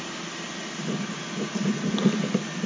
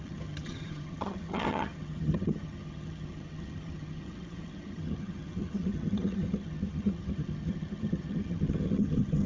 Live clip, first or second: first